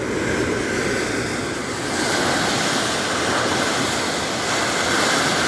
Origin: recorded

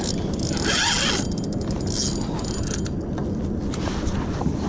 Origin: recorded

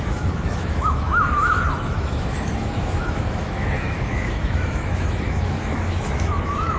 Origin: remade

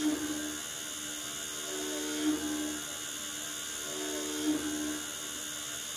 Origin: recorded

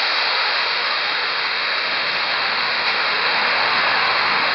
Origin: remade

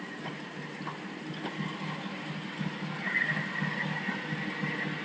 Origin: recorded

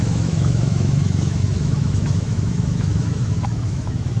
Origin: remade